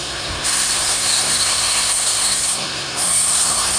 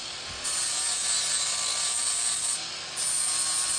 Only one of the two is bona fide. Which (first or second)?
second